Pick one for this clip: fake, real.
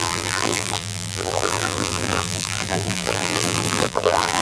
fake